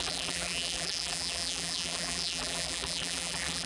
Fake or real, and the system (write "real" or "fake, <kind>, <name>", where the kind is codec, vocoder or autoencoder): fake, vocoder, BigVGAN v2